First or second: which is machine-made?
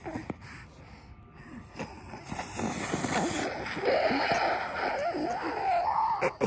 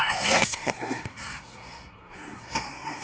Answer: second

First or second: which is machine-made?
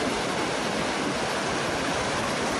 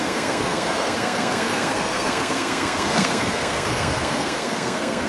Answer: second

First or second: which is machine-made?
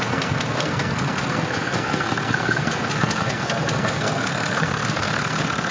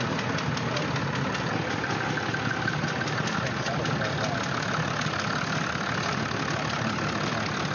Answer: first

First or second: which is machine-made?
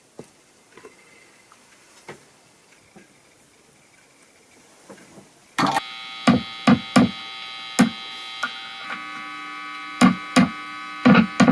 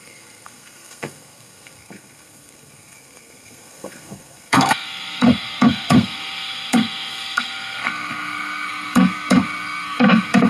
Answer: second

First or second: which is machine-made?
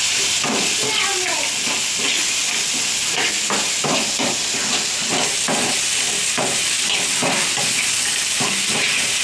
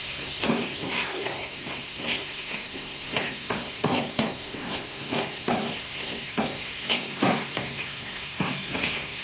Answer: second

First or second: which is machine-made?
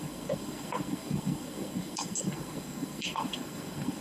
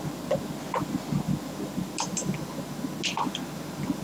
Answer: first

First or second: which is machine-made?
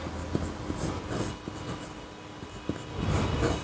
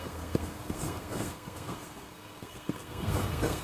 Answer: second